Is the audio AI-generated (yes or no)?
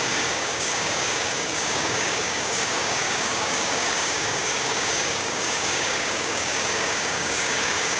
yes